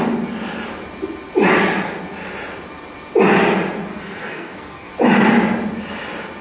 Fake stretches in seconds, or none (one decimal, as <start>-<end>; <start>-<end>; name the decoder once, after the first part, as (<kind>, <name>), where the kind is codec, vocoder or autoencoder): 3.9-4.9 (codec, SNAC)